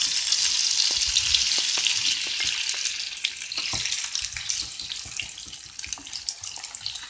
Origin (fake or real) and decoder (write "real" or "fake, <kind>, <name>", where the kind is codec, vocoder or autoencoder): real